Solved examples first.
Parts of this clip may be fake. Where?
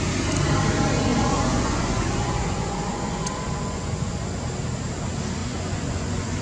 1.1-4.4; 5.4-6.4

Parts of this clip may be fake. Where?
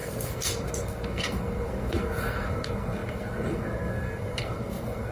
0.0-5.1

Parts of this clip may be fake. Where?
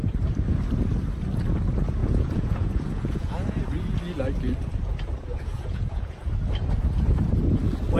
2.0-3.5; 5.3-6.3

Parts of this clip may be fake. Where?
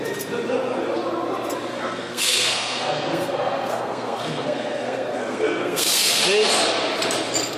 1.7-6.2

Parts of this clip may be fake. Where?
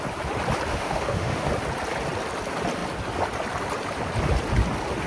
0.7-1.5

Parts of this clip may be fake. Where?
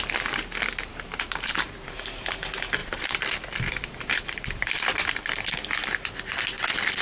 0.9-1.7; 2.8-4.5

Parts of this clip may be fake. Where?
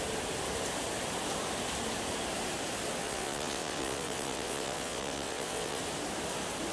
3.0-5.8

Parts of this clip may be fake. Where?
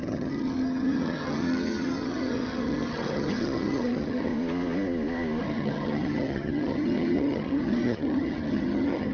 0.0-4.3; 5.4-9.1